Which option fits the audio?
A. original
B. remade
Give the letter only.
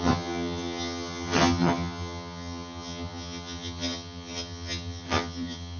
B